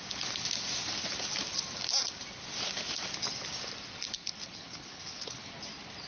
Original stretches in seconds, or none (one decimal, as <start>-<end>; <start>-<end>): 0.0-4.4; 5.5-6.1

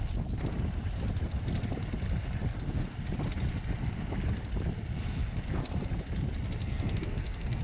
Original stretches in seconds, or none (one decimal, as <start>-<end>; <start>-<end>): 0.0-6.6

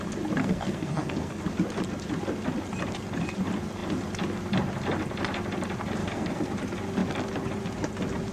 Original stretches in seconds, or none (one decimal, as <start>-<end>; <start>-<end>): 0.0-0.4; 1.4-6.0; 6.5-8.3

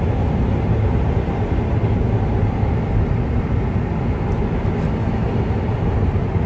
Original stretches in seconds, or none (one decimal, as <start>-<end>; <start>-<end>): 1.8-5.7